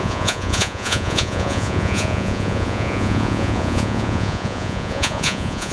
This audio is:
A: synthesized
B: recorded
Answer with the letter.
A